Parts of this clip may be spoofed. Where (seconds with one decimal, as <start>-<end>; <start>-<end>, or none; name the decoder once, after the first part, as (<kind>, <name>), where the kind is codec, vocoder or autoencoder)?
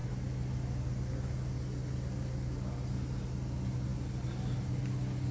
none